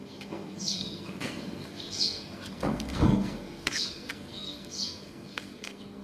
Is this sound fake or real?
fake